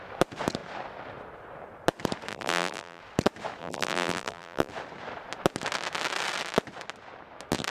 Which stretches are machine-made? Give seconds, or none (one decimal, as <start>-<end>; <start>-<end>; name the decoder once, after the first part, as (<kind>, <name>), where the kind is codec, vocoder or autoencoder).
2.3-3.0 (vocoder, BigVGAN v2); 3.6-4.7